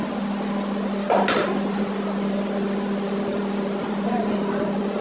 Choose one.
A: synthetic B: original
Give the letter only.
B